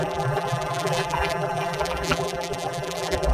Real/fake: fake